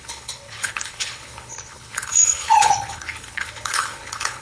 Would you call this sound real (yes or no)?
no